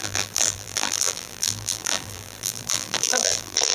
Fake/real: fake